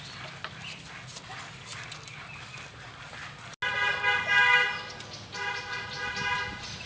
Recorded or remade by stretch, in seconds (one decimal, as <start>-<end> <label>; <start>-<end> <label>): 0.0-6.9 recorded

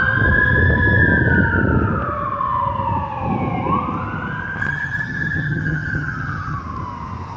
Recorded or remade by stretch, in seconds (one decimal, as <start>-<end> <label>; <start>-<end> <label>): 0.0-4.6 recorded; 4.6-6.6 remade; 6.6-7.4 recorded

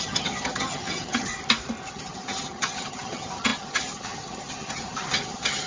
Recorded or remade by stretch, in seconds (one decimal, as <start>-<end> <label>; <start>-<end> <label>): 0.0-1.3 remade; 1.3-1.9 recorded; 1.9-5.7 remade

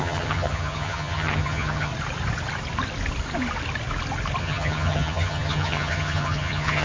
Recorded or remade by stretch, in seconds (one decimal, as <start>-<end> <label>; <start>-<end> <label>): 0.0-1.9 remade; 1.9-4.4 recorded; 4.4-6.8 remade

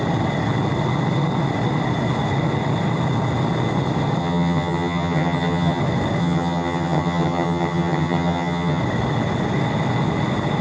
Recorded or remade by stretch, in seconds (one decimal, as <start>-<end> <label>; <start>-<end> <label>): 0.0-4.2 recorded; 4.2-5.8 remade; 5.8-6.2 recorded; 6.2-8.8 remade; 8.8-10.6 recorded

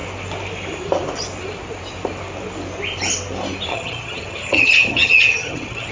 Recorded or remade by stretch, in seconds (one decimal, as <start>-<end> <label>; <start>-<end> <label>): 0.0-3.7 recorded; 3.7-5.9 remade